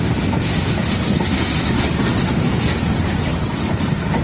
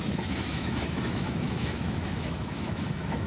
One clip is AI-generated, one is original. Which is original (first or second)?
first